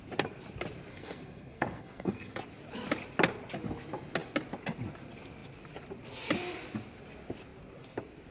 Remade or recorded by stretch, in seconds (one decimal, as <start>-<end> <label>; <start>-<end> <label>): 0.0-0.9 recorded; 0.9-2.4 remade; 2.4-8.3 recorded